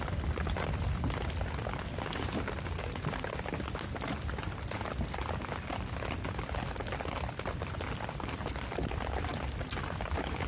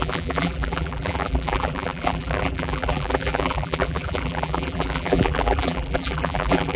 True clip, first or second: first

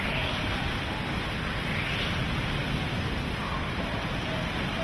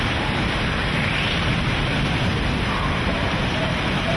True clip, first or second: first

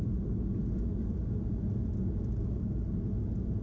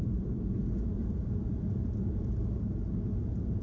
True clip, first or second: first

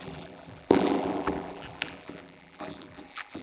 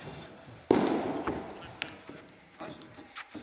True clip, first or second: second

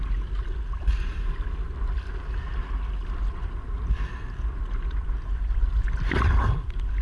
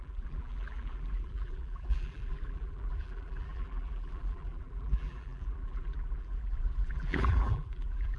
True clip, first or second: first